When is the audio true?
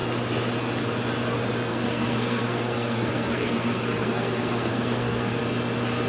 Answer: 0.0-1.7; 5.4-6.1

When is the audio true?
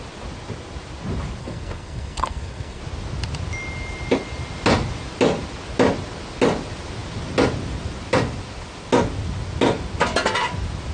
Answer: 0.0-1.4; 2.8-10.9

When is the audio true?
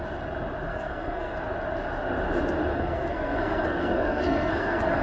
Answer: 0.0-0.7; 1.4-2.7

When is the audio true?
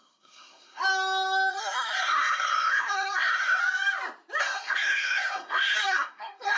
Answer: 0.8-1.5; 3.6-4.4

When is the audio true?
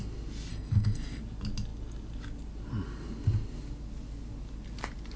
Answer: 0.0-0.5; 1.2-5.2